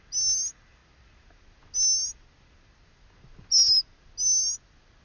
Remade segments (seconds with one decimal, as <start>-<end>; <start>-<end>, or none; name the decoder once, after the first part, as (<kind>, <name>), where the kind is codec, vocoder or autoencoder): none